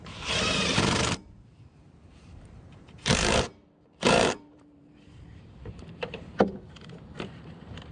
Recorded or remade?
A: remade